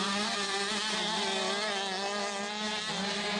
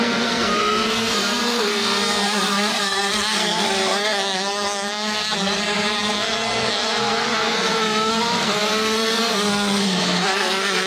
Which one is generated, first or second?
second